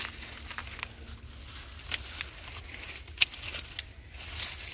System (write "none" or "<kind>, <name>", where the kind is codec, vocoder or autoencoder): none